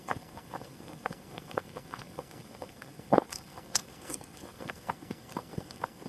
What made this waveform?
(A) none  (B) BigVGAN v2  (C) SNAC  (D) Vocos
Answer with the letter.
C